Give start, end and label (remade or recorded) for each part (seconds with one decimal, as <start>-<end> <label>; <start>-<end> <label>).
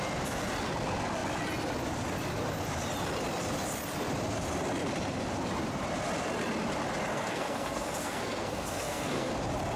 0.0-7.1 recorded; 7.1-9.3 remade; 9.3-9.8 recorded